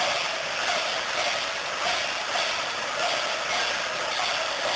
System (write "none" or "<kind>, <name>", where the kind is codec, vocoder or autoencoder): none